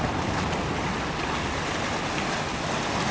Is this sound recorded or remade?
recorded